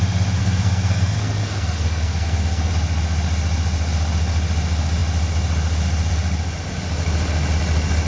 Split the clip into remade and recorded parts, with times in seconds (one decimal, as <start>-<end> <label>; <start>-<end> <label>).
0.0-0.4 recorded; 0.4-2.7 remade; 2.7-8.1 recorded